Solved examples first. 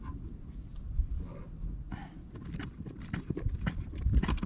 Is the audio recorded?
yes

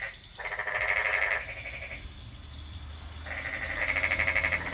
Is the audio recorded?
yes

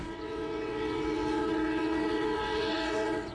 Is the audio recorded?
no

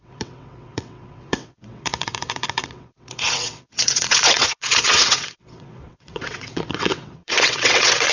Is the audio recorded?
no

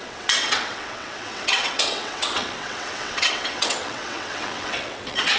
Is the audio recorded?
no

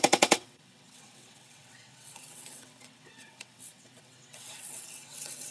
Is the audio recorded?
no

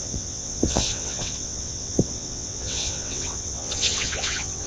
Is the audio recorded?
no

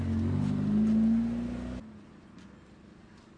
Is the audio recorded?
yes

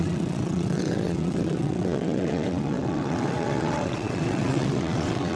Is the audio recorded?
no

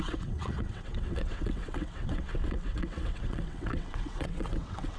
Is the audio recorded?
no